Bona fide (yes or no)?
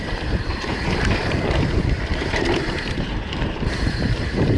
no